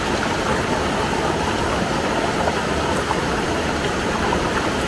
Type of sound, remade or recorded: recorded